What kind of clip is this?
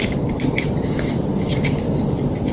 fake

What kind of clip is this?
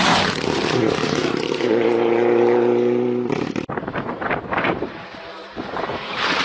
fake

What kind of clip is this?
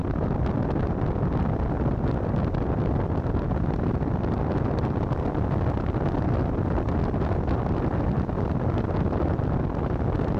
real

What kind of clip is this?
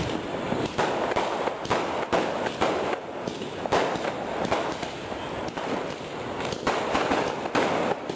real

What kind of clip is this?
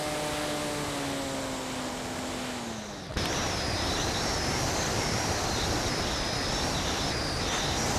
real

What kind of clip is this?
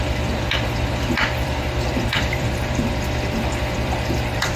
fake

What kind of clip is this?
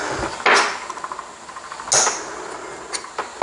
real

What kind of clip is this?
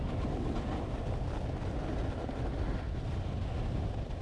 real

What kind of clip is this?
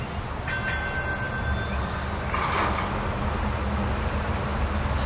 real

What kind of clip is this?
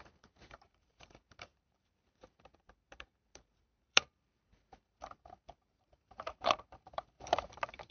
fake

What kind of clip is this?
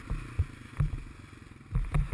fake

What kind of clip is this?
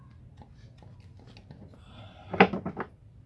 real